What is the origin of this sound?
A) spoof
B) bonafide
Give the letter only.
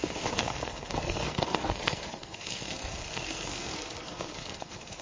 A